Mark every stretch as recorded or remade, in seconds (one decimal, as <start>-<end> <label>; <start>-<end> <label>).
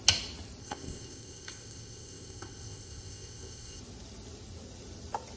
0.0-0.6 recorded; 0.6-3.8 remade; 3.8-5.4 recorded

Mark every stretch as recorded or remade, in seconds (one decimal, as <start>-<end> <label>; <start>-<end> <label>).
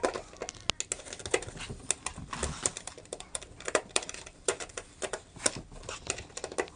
0.0-2.1 recorded; 2.1-4.7 remade; 4.7-6.8 recorded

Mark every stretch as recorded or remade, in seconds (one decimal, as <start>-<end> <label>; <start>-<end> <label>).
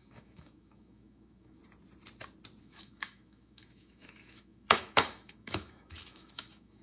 0.0-1.6 remade; 1.6-2.6 recorded; 2.6-6.8 remade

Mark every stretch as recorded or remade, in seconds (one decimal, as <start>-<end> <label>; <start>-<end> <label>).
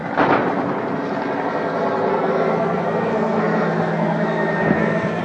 0.0-2.1 recorded; 2.1-5.2 remade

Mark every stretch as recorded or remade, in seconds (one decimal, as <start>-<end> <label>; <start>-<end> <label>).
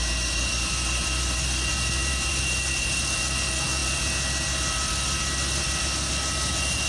0.0-2.0 recorded; 2.0-2.6 remade; 2.6-6.9 recorded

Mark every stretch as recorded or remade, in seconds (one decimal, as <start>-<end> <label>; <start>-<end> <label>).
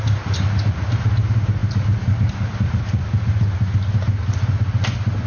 0.0-5.3 recorded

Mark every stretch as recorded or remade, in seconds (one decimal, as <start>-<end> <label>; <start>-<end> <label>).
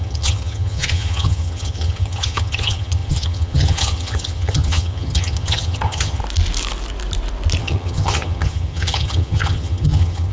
0.0-6.2 remade; 6.2-7.6 recorded; 7.6-10.3 remade